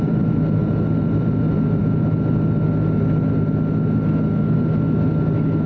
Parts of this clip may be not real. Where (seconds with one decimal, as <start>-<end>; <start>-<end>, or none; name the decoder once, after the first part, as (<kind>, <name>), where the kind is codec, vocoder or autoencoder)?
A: 0.0-1.8 (vocoder, BigVGAN v2); 5.2-5.7

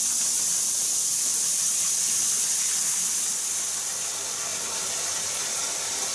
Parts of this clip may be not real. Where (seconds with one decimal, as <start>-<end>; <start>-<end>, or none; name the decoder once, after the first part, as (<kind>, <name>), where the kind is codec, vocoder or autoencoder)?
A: 1.1-2.3 (vocoder, BigVGAN v2); 4.5-6.1

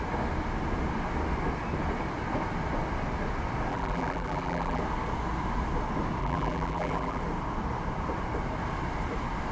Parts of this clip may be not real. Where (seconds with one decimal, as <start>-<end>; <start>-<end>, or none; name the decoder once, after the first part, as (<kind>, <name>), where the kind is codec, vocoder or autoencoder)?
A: 3.7-4.8 (vocoder, BigVGAN v2); 6.2-7.2

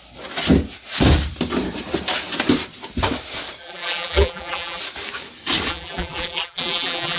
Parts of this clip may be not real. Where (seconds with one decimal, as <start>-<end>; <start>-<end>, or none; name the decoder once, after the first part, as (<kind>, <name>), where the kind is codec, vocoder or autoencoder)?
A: 3.6-4.8 (vocoder, BigVGAN v2); 5.7-7.2

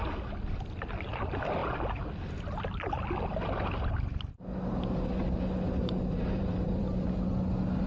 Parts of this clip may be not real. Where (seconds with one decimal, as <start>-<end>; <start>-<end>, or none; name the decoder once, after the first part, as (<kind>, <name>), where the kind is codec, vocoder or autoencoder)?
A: 5.8-6.8 (vocoder, BigVGAN v2)

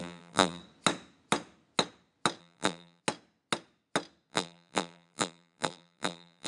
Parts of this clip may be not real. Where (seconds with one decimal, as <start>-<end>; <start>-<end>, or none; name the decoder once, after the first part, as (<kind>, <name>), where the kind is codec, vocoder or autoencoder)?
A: 0.0-0.6 (vocoder, BigVGAN v2); 2.4-3.0; 4.3-6.5